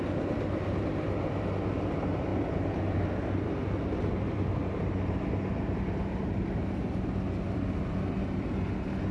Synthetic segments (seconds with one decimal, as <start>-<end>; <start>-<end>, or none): none